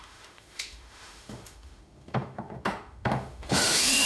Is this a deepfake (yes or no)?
yes